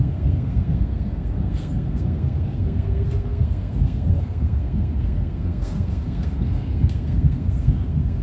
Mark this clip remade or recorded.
remade